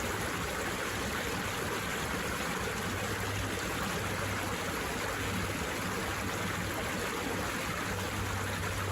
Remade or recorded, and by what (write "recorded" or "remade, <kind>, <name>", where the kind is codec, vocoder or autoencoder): recorded